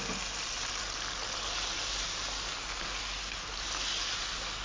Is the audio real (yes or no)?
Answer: yes